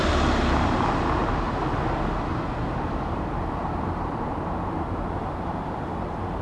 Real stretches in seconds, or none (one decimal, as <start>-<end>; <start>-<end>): 0.0-1.2; 1.7-2.3